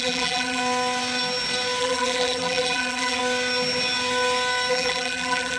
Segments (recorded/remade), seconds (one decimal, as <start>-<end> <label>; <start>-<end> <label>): 0.0-0.6 remade; 0.6-1.8 recorded; 1.8-3.2 remade; 3.2-4.7 recorded; 4.7-5.6 remade